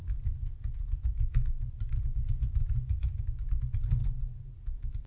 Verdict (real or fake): real